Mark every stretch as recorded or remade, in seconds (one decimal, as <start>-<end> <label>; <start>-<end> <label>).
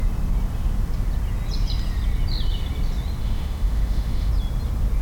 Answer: 0.0-3.2 recorded; 3.2-4.3 remade; 4.3-5.0 recorded